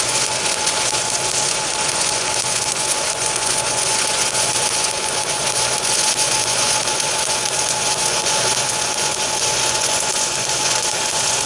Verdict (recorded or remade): remade